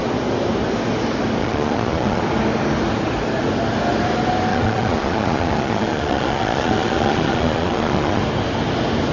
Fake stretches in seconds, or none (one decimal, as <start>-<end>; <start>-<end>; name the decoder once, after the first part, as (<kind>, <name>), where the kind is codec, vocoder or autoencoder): 1.4-2.2 (vocoder, Vocos); 4.5-8.2